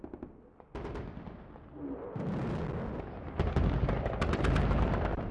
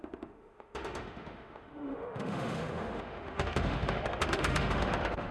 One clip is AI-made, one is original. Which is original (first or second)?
first